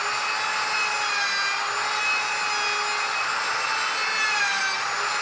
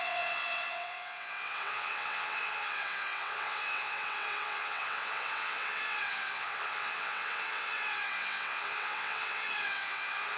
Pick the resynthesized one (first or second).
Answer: second